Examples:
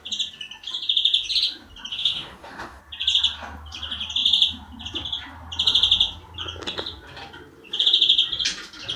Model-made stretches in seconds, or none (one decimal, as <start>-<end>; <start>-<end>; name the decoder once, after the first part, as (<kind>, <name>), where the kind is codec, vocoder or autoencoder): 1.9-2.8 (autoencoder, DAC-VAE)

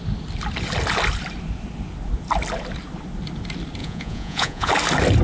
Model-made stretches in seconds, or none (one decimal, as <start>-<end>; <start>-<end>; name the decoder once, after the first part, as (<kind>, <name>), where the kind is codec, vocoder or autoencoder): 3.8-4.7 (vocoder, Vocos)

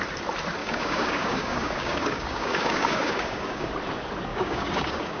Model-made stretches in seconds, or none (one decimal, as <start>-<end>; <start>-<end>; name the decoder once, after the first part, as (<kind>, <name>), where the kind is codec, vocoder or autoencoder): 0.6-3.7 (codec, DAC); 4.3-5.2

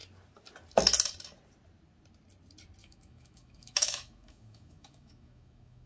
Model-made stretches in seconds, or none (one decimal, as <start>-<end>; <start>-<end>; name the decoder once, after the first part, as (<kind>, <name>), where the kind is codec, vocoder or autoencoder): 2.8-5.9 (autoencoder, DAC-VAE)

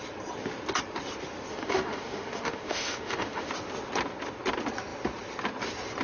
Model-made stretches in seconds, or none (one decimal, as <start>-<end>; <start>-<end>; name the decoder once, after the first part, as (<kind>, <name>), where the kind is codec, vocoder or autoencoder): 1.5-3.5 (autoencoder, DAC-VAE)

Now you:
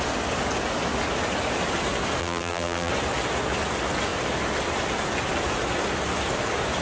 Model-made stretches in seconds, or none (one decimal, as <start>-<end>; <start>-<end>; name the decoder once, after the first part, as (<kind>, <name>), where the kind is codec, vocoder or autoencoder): 2.2-2.9 (vocoder, BigVGAN v2)